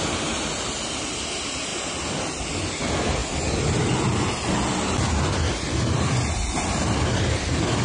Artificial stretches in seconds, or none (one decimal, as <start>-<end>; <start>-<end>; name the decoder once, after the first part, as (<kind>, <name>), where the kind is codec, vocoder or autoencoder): none

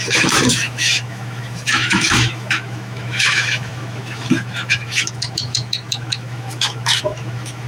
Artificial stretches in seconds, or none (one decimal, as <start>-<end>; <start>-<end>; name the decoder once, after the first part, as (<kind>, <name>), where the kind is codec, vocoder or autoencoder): 0.0-7.7 (autoencoder, DAC-VAE)

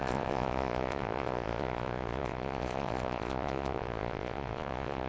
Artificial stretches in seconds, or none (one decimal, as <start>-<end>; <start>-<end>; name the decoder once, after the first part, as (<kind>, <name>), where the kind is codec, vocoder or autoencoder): 0.0-5.1 (vocoder, Vocos)